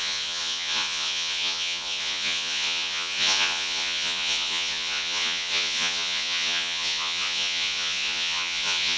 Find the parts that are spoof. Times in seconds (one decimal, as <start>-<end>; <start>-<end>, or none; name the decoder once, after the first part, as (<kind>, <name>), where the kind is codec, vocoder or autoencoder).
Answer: 0.0-9.0 (vocoder, Vocos)